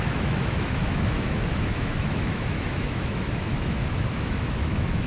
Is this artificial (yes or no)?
yes